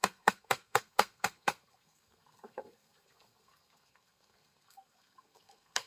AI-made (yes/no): yes